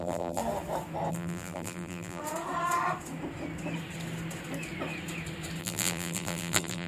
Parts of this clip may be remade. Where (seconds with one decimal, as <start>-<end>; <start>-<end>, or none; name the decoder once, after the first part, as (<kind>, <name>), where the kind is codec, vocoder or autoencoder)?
0.0-0.4 (vocoder, BigVGAN v2); 1.1-2.2; 5.6-6.9